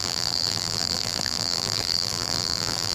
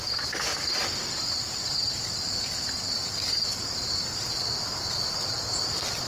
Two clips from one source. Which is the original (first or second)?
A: second